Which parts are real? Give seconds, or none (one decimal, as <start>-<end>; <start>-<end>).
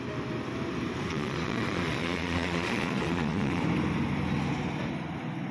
0.0-1.1; 3.6-5.5